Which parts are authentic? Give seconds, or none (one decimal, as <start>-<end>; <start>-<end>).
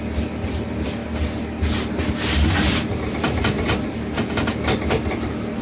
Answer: 0.0-5.6